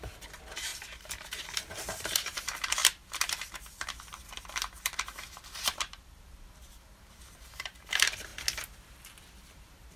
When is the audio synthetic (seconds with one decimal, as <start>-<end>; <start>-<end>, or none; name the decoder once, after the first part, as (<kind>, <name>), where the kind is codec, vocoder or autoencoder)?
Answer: 0.0-8.3 (vocoder, BigVGAN v2); 9.3-10.0